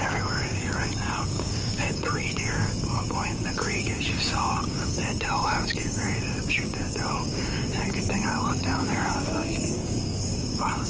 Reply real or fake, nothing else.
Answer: fake